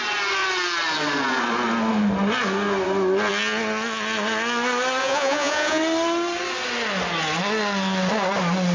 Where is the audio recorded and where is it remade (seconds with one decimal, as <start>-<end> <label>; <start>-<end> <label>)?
0.0-5.0 recorded; 5.0-5.8 remade; 5.8-8.7 recorded